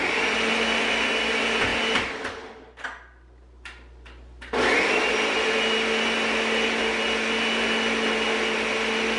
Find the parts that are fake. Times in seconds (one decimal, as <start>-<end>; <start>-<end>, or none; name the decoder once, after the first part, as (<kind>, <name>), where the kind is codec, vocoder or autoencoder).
none